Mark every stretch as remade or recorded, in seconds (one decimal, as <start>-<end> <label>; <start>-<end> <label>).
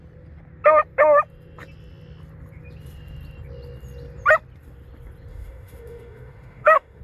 0.0-5.3 recorded; 5.3-7.0 remade